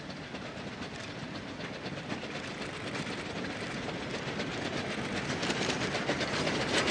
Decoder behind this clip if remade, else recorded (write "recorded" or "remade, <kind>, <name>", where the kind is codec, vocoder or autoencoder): recorded